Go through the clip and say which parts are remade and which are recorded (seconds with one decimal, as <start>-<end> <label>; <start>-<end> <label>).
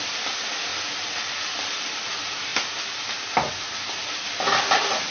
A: 0.0-5.1 recorded